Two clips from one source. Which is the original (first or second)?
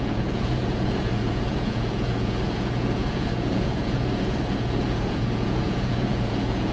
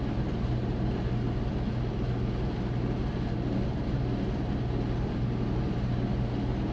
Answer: second